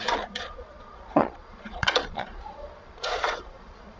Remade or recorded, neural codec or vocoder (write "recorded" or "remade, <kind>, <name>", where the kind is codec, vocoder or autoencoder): remade, vocoder, Vocos